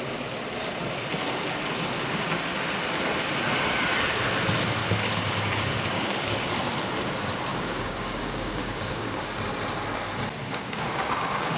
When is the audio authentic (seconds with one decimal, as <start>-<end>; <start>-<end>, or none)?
0.0-4.8; 6.5-7.5; 9.2-10.4

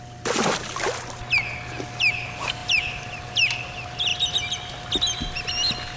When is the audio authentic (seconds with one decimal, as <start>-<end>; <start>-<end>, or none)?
0.0-6.0

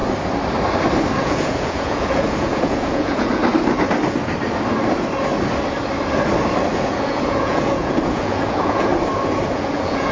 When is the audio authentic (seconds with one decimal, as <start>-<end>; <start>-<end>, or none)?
0.0-1.1; 3.4-6.7; 8.9-9.5

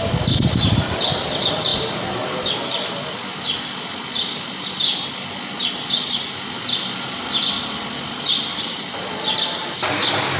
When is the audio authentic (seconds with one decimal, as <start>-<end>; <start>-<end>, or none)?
0.0-10.4

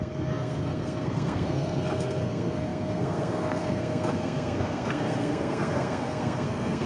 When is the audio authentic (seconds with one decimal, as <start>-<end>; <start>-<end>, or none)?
none